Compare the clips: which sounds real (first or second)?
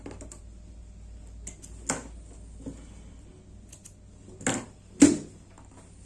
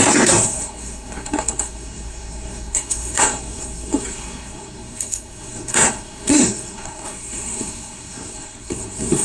first